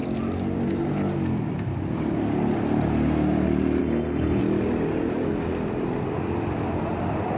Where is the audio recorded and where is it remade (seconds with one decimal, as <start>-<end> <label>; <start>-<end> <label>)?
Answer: 0.0-3.8 recorded; 3.8-4.4 remade; 4.4-7.4 recorded